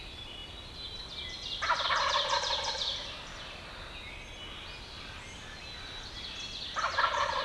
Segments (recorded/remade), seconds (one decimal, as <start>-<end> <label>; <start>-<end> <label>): 0.0-7.4 recorded